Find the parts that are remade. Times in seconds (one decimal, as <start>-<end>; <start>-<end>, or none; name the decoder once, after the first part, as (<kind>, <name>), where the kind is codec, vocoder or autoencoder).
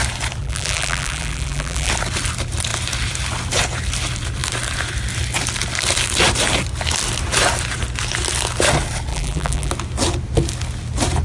0.4-1.9 (vocoder, BigVGAN v2); 9.1-9.7